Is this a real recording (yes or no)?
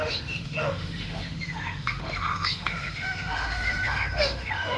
no